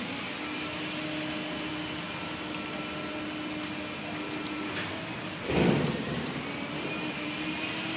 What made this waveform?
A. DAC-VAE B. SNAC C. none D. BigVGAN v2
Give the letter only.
C